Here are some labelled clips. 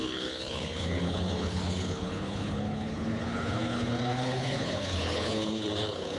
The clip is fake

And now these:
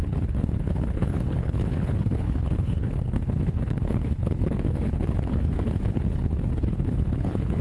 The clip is fake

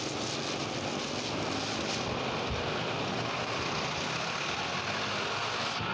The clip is real